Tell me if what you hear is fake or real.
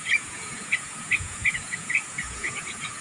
fake